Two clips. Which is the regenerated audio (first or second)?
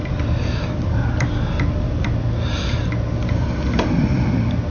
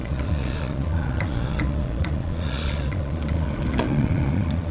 second